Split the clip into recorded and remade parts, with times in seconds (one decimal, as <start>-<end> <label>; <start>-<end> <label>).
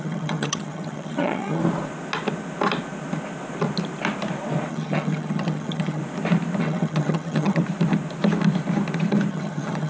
0.0-1.6 remade; 1.6-4.7 recorded; 4.7-6.0 remade; 6.0-6.6 recorded; 6.6-7.6 remade; 7.6-9.3 recorded; 9.3-9.9 remade